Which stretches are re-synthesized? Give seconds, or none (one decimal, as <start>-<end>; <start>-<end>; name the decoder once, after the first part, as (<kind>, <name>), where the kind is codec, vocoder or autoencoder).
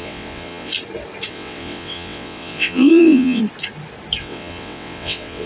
0.0-0.7 (vocoder, WaveNeXt); 1.3-3.4; 4.2-5.5